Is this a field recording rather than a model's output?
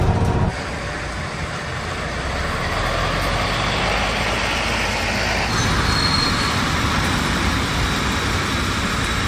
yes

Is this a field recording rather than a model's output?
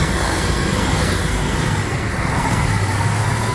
no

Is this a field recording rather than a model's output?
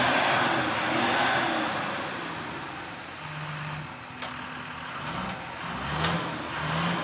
yes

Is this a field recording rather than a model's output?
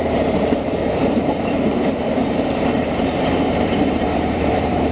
no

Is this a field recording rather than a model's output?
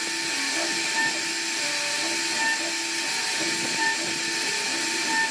yes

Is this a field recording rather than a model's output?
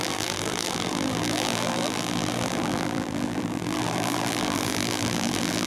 no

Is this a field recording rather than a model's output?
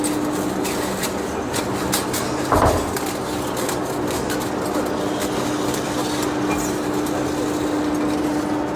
yes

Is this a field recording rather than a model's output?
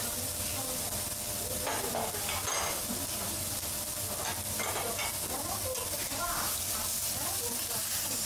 yes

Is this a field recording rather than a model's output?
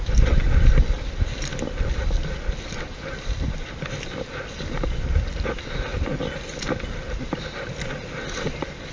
yes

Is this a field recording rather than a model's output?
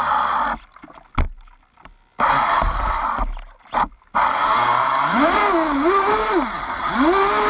yes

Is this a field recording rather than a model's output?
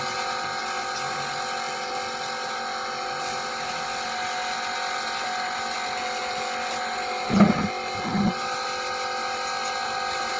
yes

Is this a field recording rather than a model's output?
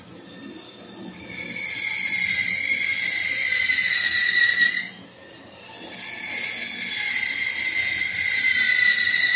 yes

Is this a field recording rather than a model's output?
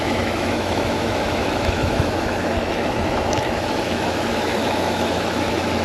no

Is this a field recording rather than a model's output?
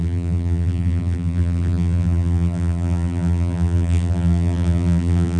no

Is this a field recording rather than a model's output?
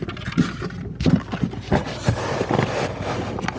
yes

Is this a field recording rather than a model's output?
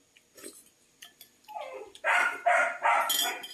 yes